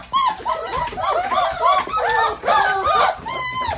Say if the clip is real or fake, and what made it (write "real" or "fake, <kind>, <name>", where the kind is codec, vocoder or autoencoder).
real